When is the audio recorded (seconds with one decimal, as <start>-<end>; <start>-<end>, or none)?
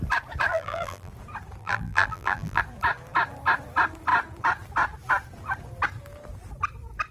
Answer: 0.0-0.5; 1.1-1.6; 2.6-7.1